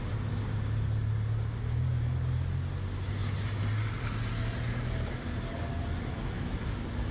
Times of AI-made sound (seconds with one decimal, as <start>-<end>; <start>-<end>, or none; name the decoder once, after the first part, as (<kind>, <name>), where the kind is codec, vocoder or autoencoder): none